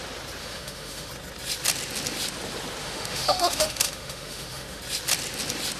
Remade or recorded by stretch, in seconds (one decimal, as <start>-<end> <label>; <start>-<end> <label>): 0.0-0.4 recorded; 0.4-1.1 remade; 1.1-2.8 recorded; 2.8-4.8 remade; 4.8-5.8 recorded